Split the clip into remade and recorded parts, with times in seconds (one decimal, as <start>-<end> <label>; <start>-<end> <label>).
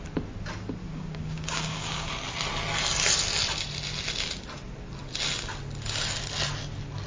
0.0-0.8 recorded; 0.8-2.1 remade; 2.1-7.1 recorded